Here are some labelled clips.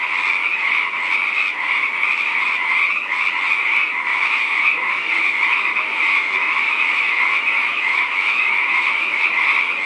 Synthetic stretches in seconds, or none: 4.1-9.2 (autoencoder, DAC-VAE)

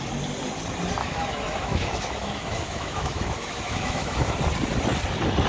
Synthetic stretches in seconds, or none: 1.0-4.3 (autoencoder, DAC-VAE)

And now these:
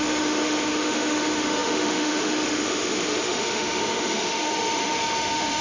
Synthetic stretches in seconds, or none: 0.0-5.6 (autoencoder, DAC-VAE)

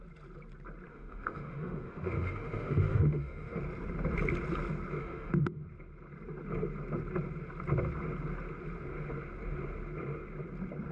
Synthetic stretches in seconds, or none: 0.9-3.6 (autoencoder, DAC-VAE); 5.0-5.6

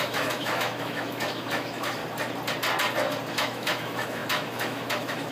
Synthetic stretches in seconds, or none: 0.0-2.0 (autoencoder, DAC-VAE); 3.3-5.3

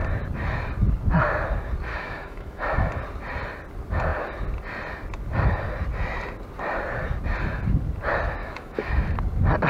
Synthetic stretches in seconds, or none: 1.9-2.9 (autoencoder, DAC-VAE); 8.4-8.9